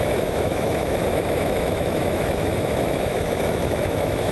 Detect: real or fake fake